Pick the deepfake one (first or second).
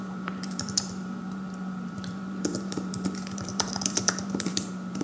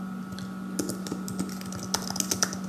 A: first